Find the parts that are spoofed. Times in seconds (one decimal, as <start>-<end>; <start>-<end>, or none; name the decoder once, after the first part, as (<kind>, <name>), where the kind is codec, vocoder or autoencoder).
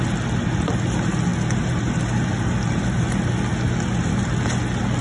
none